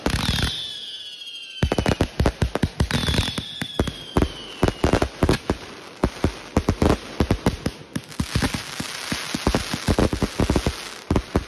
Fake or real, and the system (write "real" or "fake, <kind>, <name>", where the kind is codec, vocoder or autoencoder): real